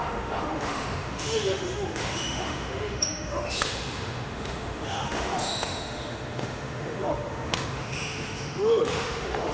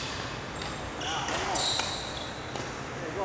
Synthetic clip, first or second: first